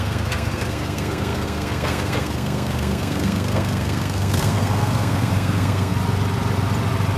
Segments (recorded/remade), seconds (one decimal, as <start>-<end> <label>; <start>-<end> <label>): 0.0-5.9 remade; 5.9-7.2 recorded